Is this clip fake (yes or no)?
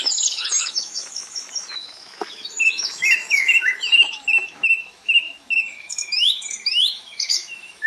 yes